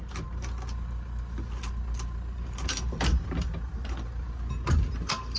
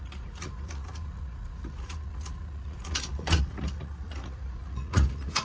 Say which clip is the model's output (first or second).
second